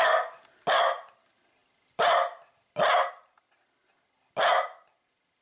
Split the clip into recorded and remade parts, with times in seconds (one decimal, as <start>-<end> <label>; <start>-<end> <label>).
0.0-5.4 recorded